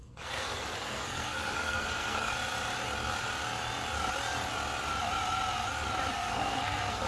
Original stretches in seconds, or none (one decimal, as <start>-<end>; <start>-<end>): 2.3-6.1